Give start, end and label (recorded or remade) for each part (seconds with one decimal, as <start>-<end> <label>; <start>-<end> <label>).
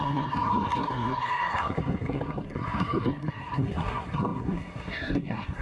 0.0-5.6 remade